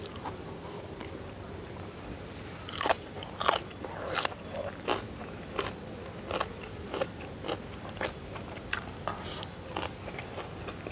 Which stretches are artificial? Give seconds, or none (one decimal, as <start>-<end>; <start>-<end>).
none